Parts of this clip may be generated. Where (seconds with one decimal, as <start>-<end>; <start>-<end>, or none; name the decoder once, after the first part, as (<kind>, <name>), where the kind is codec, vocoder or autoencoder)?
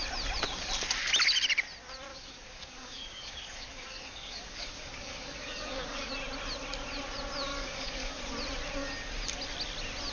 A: 2.1-6.1 (codec, DAC); 7.5-8.2